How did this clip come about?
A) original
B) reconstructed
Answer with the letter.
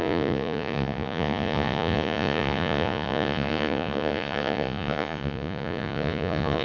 B